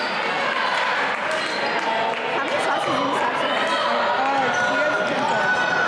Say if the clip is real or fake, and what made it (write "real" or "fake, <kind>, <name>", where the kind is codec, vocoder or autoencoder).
real